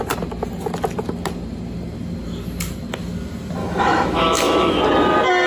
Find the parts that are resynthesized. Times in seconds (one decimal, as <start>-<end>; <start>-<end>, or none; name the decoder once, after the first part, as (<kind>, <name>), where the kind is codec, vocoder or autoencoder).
3.6-4.8 (autoencoder, DAC-VAE)